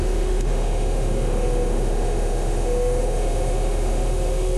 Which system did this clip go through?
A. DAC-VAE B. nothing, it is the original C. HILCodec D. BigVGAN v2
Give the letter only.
A